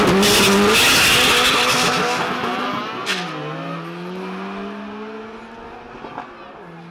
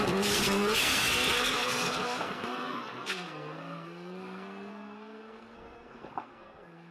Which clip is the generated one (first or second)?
second